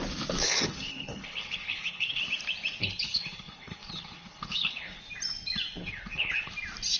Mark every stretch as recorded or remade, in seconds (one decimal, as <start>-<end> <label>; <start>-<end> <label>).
0.0-0.4 recorded; 0.4-2.2 remade; 2.2-2.8 recorded; 2.8-5.0 remade; 5.0-5.8 recorded; 5.8-6.5 remade; 6.5-7.0 recorded